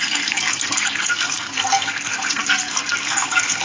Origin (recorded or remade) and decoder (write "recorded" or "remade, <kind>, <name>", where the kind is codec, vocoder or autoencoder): remade, codec, SNAC